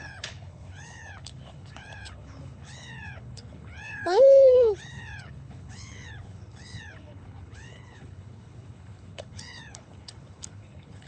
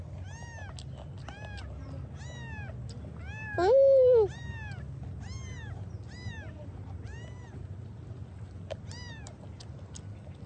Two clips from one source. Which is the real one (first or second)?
second